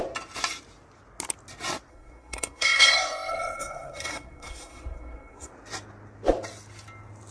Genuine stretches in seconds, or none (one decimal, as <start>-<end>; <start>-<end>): 0.0-1.9; 5.5-7.3